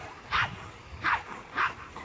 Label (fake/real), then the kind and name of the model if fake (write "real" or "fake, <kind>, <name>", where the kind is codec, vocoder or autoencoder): real